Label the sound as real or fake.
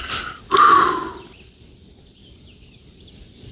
fake